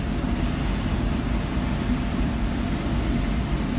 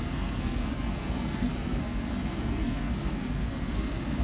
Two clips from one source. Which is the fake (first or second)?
second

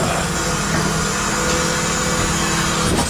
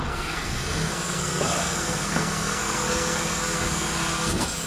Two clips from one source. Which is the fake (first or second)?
second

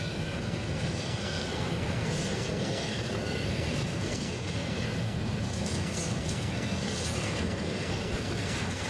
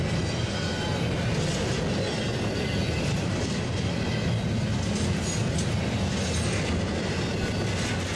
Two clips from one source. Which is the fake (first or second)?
first